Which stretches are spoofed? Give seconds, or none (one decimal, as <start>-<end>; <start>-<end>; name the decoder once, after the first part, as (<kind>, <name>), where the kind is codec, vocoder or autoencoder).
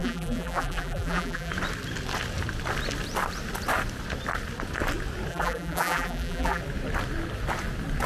0.0-1.5 (vocoder, BigVGAN v2); 5.3-6.6